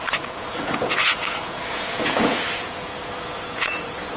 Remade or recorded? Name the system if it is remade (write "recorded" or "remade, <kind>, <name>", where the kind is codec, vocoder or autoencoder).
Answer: remade, vocoder, Vocos